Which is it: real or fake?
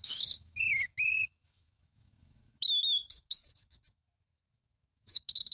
fake